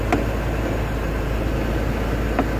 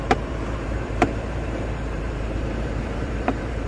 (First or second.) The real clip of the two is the first